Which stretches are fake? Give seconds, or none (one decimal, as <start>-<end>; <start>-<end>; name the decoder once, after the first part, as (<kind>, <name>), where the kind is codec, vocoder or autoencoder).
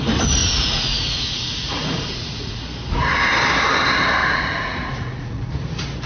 0.4-2.6 (vocoder, Vocos); 4.2-5.5